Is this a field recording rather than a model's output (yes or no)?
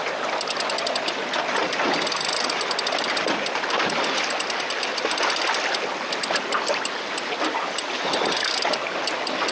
yes